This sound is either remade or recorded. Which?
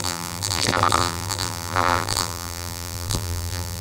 remade